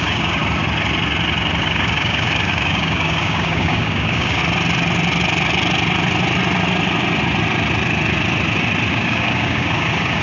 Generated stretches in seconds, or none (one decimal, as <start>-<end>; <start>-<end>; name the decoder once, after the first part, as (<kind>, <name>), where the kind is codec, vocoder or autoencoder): 0.0-0.4 (codec, DAC); 1.6-4.4; 8.9-10.2